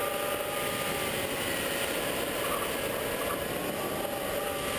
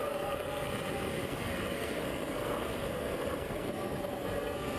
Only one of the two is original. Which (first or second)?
first